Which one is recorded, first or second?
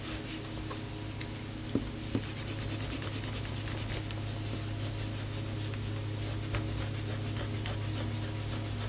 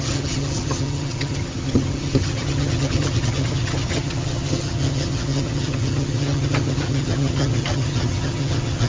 first